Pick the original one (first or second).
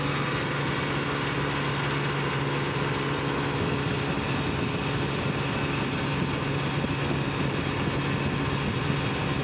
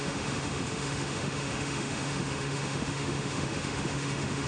first